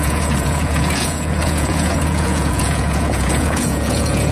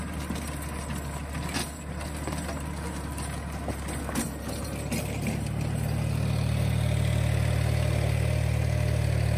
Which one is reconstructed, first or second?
first